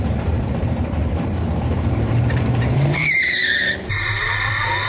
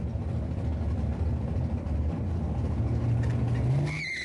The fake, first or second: first